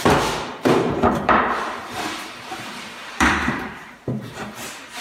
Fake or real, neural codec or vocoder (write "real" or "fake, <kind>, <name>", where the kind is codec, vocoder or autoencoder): fake, vocoder, BigVGAN v2